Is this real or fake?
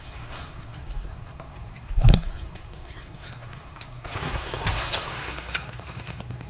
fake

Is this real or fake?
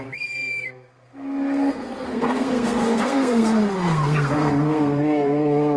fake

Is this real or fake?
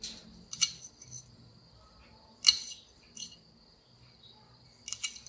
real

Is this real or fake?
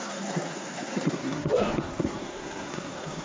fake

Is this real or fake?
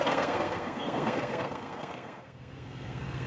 fake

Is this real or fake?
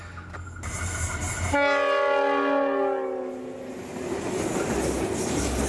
real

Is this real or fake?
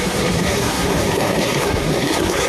fake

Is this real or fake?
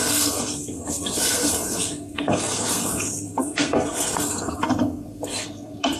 fake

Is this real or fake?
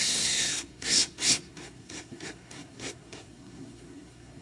fake